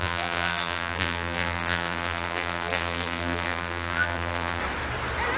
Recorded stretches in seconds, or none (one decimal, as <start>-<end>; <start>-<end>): 4.6-5.4